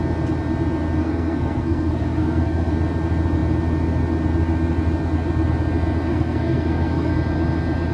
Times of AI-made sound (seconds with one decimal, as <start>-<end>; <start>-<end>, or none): 1.0-2.7; 6.1-7.1